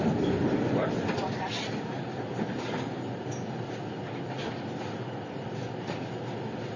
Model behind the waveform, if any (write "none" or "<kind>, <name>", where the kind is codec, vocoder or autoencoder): none